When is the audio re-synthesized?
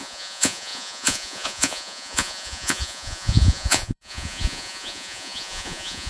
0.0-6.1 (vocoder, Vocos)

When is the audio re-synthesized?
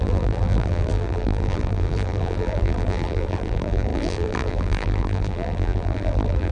0.0-6.5 (vocoder, BigVGAN v2)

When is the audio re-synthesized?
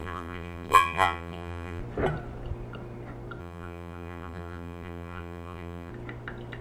0.0-1.8 (vocoder, BigVGAN v2); 3.4-5.9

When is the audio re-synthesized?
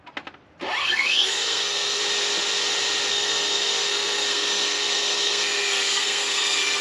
0.8-2.0 (codec, SNAC); 3.1-6.8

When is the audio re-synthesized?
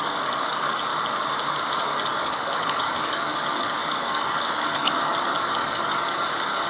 0.0-0.9 (codec, DAC); 1.7-6.7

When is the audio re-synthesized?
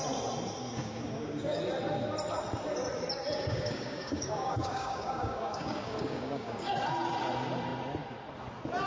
0.6-1.6 (codec, DAC); 3.5-6.7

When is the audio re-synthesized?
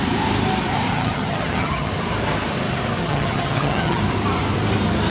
0.9-1.9 (vocoder, HiFi-GAN); 3.0-4.0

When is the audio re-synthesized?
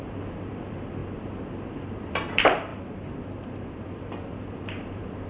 0.0-1.0 (vocoder, BigVGAN v2); 2.0-5.3